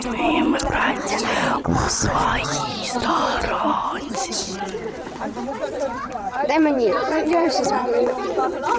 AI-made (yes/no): yes